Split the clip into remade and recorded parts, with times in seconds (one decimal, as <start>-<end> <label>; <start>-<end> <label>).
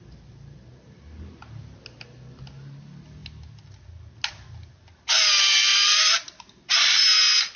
0.0-5.7 recorded; 5.7-7.0 remade; 7.0-7.6 recorded